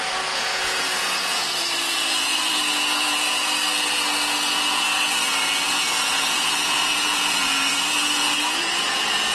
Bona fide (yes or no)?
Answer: no